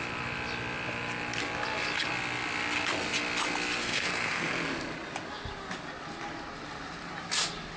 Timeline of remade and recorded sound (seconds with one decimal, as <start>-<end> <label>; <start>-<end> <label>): 0.0-3.8 recorded; 3.8-4.5 remade; 4.5-7.8 recorded

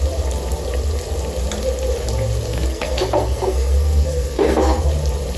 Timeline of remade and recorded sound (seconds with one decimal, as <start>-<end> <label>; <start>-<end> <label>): 0.0-2.5 recorded; 2.5-4.8 remade; 4.8-5.4 recorded

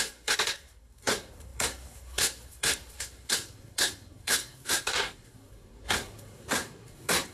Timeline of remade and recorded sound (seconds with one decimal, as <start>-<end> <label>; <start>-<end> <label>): 0.0-7.3 remade

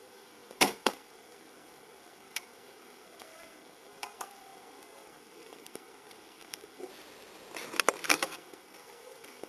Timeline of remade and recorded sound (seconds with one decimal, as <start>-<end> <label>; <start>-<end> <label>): 0.0-6.9 remade; 6.9-8.1 recorded; 8.1-9.5 remade

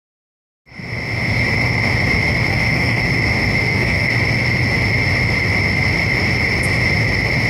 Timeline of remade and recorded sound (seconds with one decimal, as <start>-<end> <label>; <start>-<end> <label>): 0.0-2.5 recorded; 2.5-3.0 remade; 3.0-3.6 recorded; 3.6-4.1 remade; 4.1-7.5 recorded

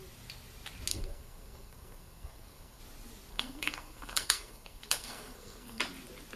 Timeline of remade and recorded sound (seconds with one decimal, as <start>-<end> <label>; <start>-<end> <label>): 0.0-0.9 recorded; 0.9-2.8 remade; 2.8-3.3 recorded; 3.3-5.8 remade; 5.8-6.4 recorded